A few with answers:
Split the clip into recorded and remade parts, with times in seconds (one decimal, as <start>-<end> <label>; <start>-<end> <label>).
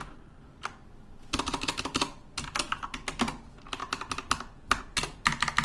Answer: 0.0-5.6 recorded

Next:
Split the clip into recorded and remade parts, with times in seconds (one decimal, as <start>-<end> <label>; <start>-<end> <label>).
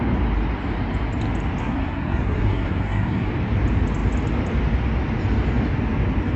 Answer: 0.0-1.6 recorded; 1.6-3.3 remade; 3.3-6.4 recorded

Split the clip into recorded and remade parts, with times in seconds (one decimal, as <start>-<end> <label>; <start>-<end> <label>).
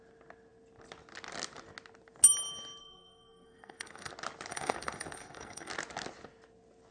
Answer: 0.0-2.8 recorded; 2.8-4.1 remade; 4.1-4.5 recorded; 4.5-5.7 remade; 5.7-6.9 recorded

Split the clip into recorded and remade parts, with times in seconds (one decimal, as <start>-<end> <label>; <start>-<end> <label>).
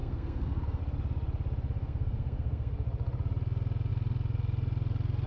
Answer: 0.0-0.8 remade; 0.8-1.8 recorded; 1.8-2.7 remade; 2.7-5.3 recorded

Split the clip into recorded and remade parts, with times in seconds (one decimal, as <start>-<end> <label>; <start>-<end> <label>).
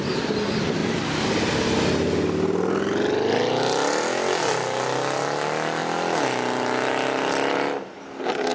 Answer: 0.0-8.5 recorded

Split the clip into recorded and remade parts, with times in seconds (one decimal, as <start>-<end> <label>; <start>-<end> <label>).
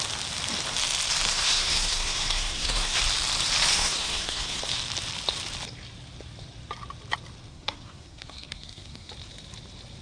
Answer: 0.0-1.3 recorded; 1.3-3.0 remade; 3.0-3.7 recorded; 3.7-4.6 remade; 4.6-7.5 recorded; 7.5-9.1 remade; 9.1-10.0 recorded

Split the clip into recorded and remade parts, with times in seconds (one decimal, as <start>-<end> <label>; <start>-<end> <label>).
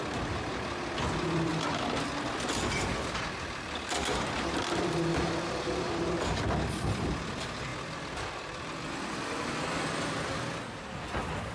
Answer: 0.0-11.5 recorded